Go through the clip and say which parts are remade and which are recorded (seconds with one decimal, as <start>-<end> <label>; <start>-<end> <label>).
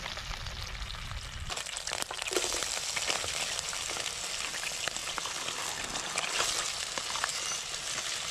0.0-8.3 recorded